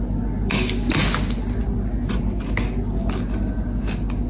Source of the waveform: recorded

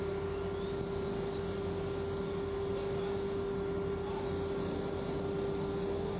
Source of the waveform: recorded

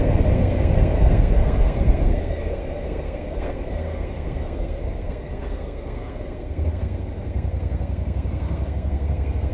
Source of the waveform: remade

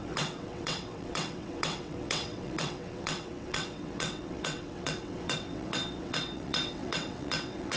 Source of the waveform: remade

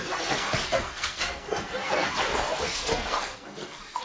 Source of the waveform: remade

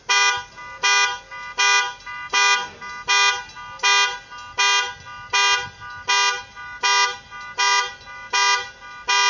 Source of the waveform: recorded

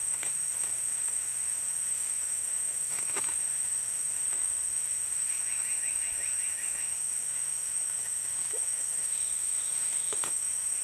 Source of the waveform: remade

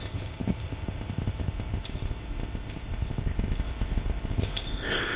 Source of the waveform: remade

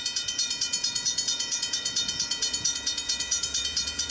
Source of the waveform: remade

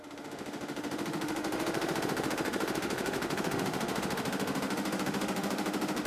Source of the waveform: remade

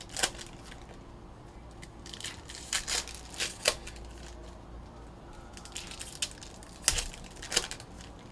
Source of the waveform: recorded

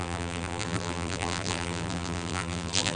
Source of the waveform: remade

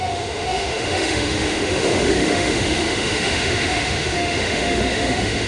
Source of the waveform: remade